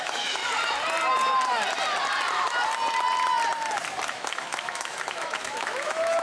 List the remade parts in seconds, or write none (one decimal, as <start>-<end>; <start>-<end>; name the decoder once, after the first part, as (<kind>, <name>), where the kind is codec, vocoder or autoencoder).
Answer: 0.0-0.4 (autoencoder, DAC-VAE); 4.1-6.2